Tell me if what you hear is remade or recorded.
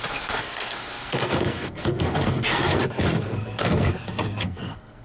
remade